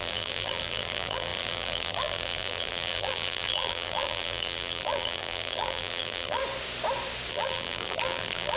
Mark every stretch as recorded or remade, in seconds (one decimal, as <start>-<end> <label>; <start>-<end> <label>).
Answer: 0.0-6.4 remade; 6.4-7.3 recorded; 7.3-8.6 remade